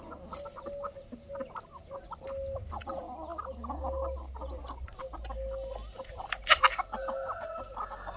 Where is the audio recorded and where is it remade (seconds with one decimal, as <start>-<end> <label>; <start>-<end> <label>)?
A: 0.0-8.2 recorded